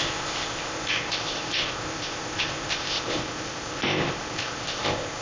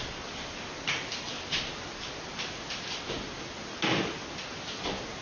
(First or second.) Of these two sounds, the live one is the second